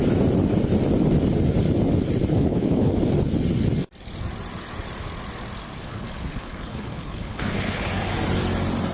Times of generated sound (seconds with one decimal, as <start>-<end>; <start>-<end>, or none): 2.3-2.9; 5.8-7.9